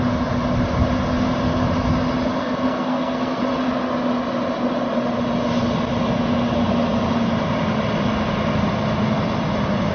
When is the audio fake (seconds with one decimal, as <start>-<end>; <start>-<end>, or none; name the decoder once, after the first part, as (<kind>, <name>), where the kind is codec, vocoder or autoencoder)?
2.4-3.4 (codec, SNAC)